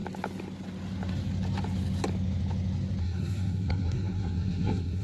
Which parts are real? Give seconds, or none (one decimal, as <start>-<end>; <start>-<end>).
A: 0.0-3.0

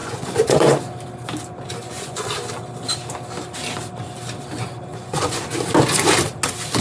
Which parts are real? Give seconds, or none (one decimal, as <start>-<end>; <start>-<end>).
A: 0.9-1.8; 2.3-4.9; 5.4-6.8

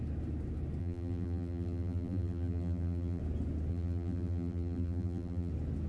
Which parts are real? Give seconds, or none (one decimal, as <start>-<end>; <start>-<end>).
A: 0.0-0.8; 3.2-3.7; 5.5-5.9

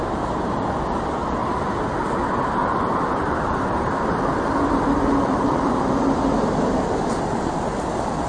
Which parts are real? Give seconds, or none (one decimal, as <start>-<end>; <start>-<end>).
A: 0.5-1.4; 1.9-2.6; 5.9-8.3

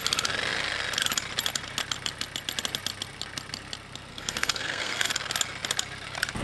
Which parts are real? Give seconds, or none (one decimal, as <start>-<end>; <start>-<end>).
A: 0.0-4.1; 5.1-6.4